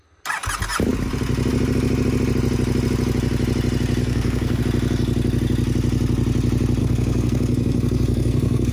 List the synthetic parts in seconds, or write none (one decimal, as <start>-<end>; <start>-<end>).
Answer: 4.0-4.6; 6.8-8.7